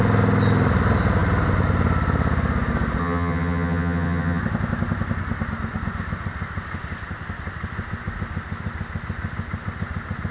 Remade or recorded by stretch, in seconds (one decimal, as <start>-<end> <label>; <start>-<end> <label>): 0.0-3.0 recorded; 3.0-4.4 remade; 4.4-10.3 recorded